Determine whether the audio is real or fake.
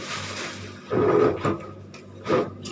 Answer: fake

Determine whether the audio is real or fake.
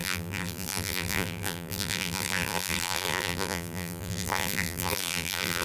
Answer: fake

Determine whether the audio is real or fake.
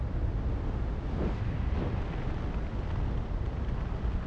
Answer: real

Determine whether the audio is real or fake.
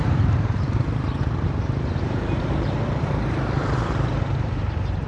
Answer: fake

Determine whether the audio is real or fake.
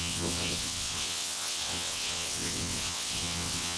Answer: fake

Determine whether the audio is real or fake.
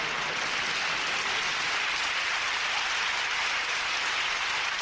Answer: real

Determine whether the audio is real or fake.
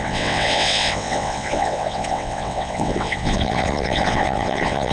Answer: fake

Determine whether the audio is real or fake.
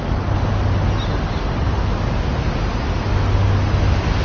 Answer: real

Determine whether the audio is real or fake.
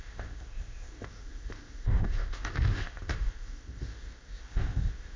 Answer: fake